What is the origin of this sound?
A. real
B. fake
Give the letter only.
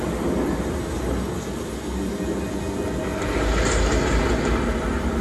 A